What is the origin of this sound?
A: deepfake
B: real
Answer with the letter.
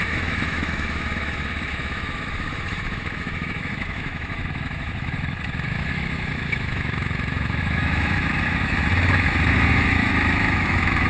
A